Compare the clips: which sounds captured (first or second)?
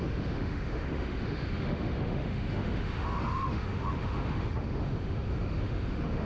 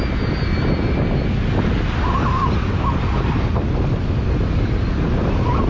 second